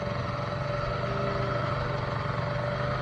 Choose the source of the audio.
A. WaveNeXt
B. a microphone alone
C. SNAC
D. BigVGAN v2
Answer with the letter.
B